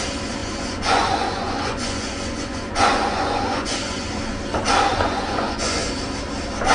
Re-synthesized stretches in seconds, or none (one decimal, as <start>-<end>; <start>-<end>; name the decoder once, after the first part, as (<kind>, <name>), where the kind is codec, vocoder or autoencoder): 0.4-4.4 (vocoder, Vocos); 4.9-5.9